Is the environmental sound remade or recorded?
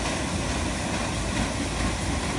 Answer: recorded